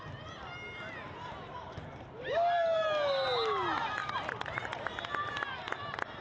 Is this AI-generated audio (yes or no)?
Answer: no